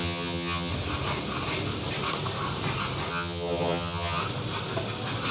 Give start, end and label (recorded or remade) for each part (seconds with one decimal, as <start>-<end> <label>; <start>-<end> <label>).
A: 0.0-0.7 remade; 0.7-3.1 recorded; 3.1-4.2 remade; 4.2-5.3 recorded